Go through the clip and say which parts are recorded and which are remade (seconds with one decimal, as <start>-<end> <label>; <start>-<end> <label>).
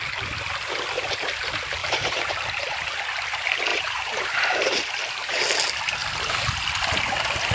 0.0-1.8 recorded; 1.8-2.3 remade; 2.3-3.7 recorded; 3.7-4.4 remade; 4.4-7.5 recorded